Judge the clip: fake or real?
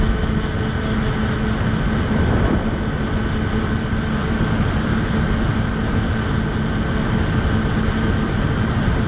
real